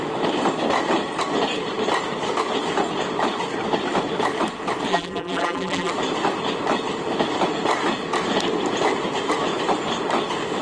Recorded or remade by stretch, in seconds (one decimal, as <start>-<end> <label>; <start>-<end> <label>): 0.0-4.9 recorded; 4.9-5.9 remade; 5.9-10.6 recorded